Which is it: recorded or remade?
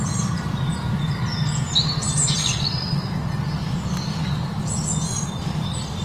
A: recorded